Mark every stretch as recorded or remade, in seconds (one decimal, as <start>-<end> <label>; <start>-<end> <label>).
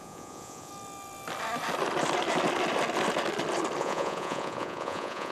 0.0-0.7 remade; 0.7-3.8 recorded; 3.8-5.3 remade